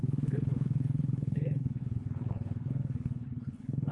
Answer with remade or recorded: remade